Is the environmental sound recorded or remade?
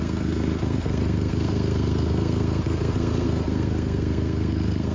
remade